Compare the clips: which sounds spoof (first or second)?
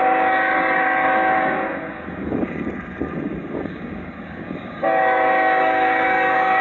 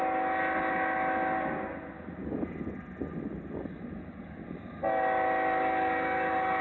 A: first